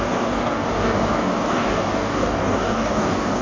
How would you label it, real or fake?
fake